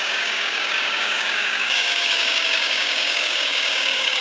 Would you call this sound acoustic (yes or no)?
no